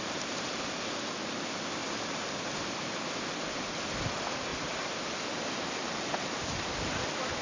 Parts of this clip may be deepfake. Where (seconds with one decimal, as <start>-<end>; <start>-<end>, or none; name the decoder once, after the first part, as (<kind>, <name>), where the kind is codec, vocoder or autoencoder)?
none